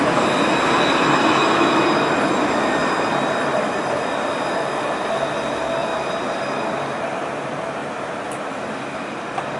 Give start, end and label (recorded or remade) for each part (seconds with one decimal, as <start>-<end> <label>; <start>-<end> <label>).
0.0-9.6 recorded